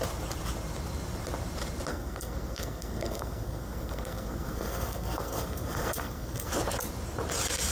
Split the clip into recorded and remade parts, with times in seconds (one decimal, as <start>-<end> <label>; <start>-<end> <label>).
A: 0.0-1.9 recorded; 1.9-6.5 remade; 6.5-7.7 recorded